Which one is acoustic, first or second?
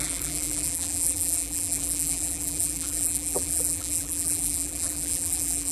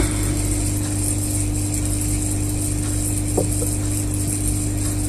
second